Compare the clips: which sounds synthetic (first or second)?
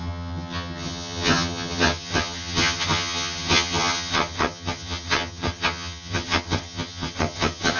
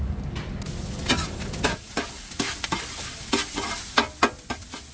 first